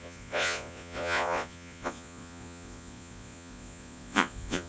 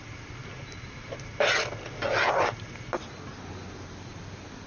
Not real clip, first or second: first